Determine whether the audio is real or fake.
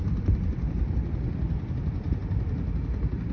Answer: real